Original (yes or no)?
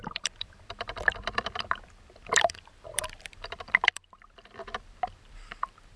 no